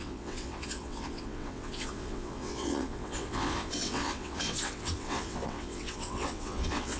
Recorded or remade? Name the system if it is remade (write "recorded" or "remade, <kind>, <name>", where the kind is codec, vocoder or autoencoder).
remade, vocoder, WaveNeXt